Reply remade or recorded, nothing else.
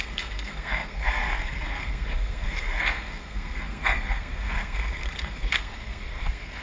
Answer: remade